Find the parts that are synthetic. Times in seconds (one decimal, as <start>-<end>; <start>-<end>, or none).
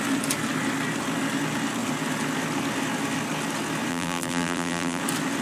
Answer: 3.9-5.0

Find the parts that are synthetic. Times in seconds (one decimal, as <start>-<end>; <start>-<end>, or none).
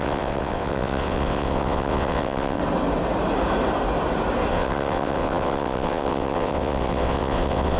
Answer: 0.0-2.6; 4.5-7.8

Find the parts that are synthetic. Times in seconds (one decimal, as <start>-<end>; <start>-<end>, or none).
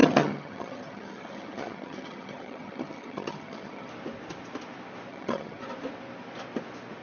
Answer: 0.0-3.9; 5.1-5.6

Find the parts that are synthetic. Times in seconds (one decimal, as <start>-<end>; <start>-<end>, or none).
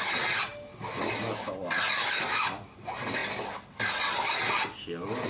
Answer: none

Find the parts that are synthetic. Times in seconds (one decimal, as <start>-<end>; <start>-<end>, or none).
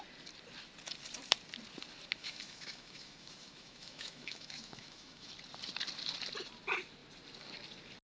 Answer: 2.2-5.3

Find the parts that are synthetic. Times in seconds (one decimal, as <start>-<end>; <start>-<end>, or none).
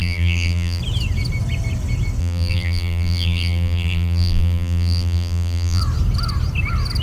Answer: 0.0-0.8; 2.2-5.8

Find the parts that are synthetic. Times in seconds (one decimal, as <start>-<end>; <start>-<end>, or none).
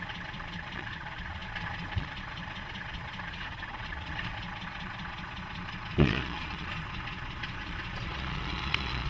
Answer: 0.0-9.1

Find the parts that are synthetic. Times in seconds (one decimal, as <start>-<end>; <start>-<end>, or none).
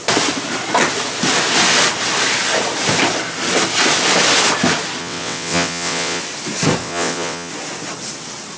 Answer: 5.0-6.2; 6.8-7.5